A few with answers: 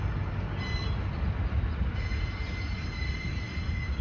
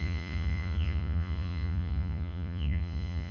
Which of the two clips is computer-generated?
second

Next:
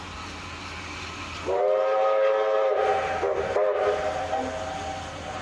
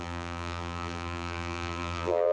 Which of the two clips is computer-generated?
second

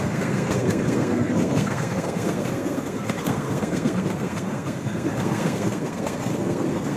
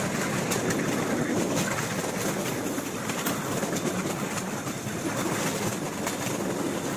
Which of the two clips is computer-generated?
first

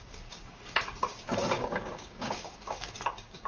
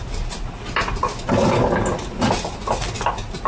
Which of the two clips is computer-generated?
first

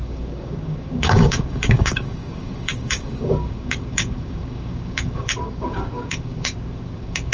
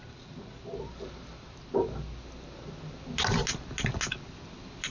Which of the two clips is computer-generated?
first